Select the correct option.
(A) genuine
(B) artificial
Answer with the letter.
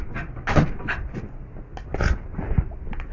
A